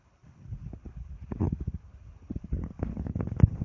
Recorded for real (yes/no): no